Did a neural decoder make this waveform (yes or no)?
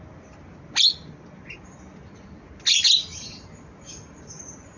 no